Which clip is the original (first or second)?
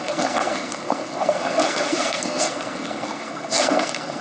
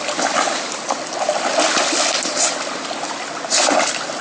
second